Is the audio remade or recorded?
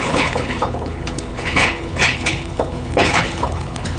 remade